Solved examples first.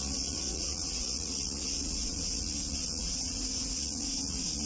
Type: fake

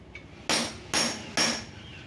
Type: real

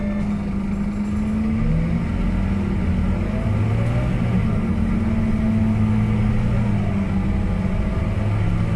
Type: real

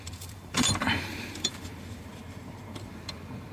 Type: fake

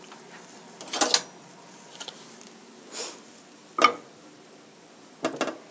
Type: real